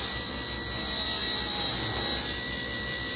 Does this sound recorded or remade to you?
remade